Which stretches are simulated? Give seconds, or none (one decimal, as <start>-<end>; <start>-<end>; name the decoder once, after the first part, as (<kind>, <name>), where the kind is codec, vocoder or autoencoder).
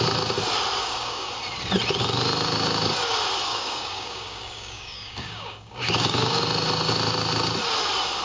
0.8-1.3 (codec, DAC); 3.5-6.4